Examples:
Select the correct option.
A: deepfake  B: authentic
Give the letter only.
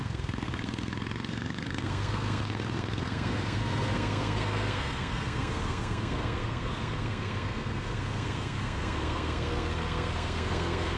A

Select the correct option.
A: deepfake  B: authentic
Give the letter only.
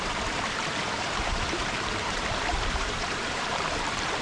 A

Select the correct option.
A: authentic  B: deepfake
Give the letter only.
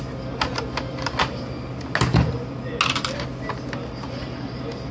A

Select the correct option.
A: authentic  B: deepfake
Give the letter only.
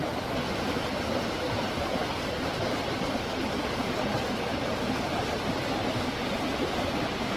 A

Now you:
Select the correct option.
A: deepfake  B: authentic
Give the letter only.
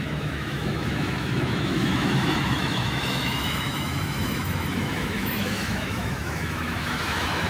A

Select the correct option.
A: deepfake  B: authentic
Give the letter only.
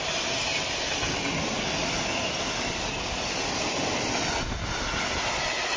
B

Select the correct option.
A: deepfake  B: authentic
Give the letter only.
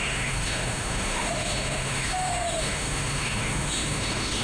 A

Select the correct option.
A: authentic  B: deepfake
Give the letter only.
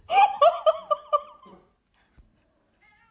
A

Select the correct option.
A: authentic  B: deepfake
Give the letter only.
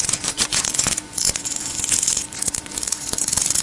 B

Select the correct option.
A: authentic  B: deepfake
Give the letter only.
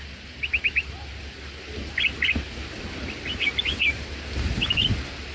A